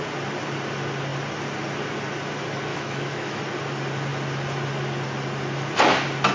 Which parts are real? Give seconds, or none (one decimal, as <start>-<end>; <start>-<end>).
0.0-2.7; 3.4-6.3